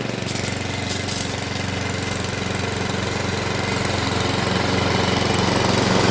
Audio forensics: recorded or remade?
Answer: recorded